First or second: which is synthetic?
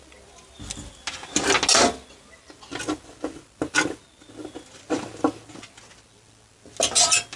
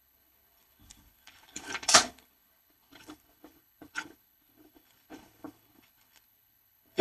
second